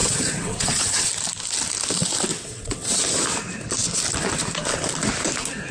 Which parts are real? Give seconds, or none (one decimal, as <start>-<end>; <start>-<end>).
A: 1.1-2.3; 3.0-5.7